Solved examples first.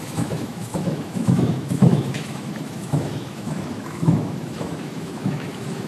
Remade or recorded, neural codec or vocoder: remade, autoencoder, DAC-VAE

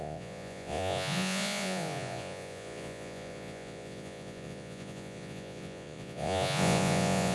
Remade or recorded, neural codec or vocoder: remade, vocoder, Vocos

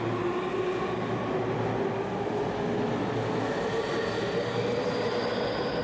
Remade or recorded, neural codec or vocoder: recorded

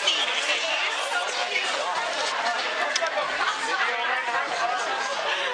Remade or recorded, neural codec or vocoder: recorded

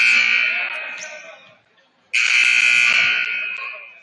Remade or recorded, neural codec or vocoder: recorded